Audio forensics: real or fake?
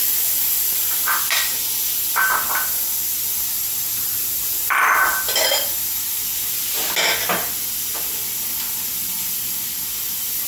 real